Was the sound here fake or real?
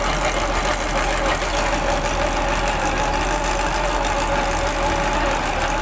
real